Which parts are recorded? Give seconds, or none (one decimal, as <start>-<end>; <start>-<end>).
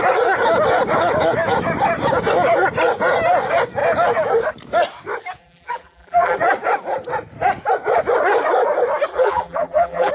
0.0-5.4; 6.4-9.1